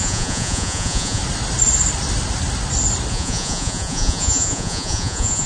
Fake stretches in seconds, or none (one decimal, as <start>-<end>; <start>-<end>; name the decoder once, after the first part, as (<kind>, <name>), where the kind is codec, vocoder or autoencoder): 0.0-1.2 (vocoder, Vocos); 3.1-5.5